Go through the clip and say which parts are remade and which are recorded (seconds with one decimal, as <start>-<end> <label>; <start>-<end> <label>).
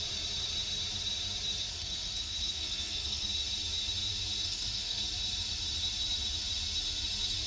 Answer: 0.0-1.7 recorded; 1.7-3.3 remade; 3.3-4.4 recorded; 4.4-5.0 remade; 5.0-7.5 recorded